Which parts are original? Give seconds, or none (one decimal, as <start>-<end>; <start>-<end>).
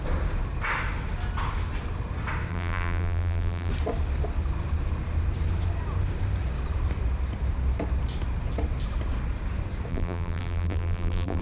0.0-2.5; 3.7-9.9